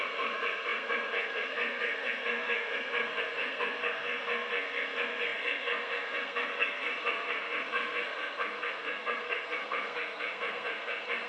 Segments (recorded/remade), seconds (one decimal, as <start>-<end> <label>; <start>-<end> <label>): 0.0-11.3 remade